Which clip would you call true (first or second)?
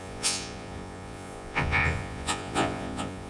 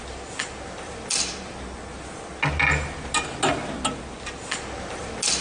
second